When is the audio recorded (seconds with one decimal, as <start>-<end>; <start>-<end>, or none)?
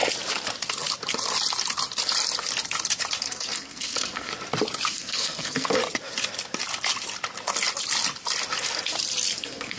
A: 0.0-3.2; 4.3-4.9; 5.8-9.4